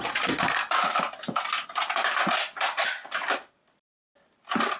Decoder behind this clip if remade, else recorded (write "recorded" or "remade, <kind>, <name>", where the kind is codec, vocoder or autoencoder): recorded